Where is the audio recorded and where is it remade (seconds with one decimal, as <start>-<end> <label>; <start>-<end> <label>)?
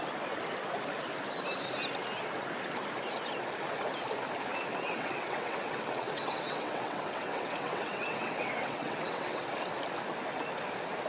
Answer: 0.0-4.7 recorded; 4.7-9.4 remade; 9.4-11.1 recorded